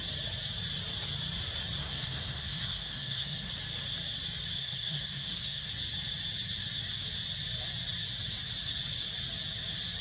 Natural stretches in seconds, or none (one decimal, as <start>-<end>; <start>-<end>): 0.0-1.8; 3.5-4.6; 5.7-10.0